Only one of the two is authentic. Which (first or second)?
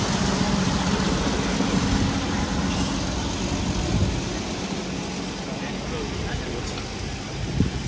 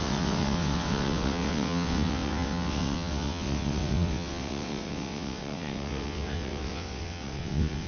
first